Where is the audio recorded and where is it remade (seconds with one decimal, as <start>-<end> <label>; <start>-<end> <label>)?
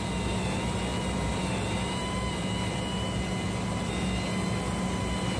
0.0-5.4 recorded